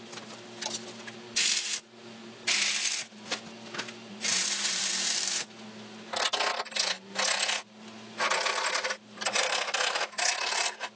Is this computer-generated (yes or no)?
no